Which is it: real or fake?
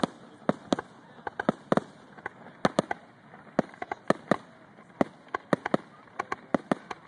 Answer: real